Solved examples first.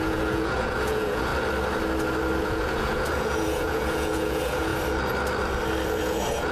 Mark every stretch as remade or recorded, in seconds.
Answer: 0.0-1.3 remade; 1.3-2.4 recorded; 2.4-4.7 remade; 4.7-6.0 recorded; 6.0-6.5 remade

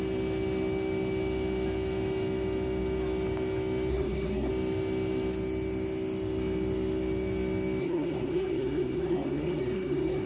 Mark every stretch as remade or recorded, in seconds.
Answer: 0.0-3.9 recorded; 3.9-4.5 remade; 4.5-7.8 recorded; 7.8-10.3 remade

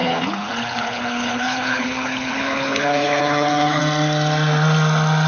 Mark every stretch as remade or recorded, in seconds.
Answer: 0.0-3.8 remade; 3.8-5.3 recorded

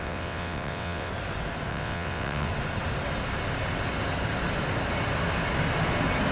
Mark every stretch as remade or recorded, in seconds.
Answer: 0.0-1.1 remade; 1.1-1.7 recorded; 1.7-2.5 remade; 2.5-6.3 recorded

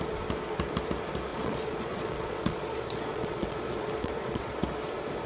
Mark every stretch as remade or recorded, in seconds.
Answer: 0.0-1.3 recorded; 1.3-4.5 remade; 4.5-5.3 recorded

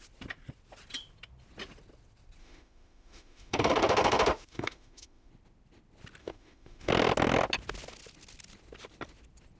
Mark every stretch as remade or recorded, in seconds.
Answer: 0.0-2.4 recorded; 2.4-5.3 remade; 5.3-6.2 recorded; 6.2-6.9 remade; 6.9-9.6 recorded

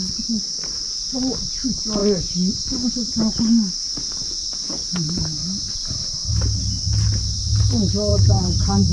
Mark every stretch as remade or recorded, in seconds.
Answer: 0.0-5.4 recorded; 5.4-6.3 remade; 6.3-8.1 recorded; 8.1-8.9 remade